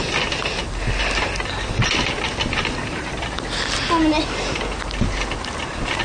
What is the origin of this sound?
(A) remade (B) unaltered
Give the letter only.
B